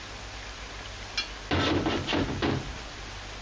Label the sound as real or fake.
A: real